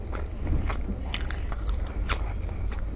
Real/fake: real